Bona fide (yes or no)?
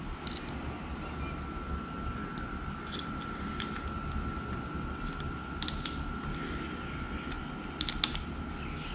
yes